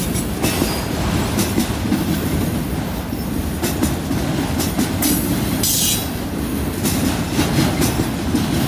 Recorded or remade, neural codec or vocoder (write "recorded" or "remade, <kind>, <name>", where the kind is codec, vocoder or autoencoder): recorded